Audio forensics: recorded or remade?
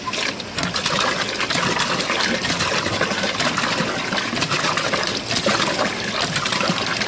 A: recorded